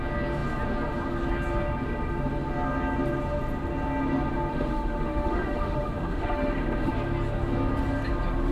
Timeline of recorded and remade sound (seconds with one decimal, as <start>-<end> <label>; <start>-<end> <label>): 0.0-4.5 recorded; 4.5-6.9 remade; 6.9-8.5 recorded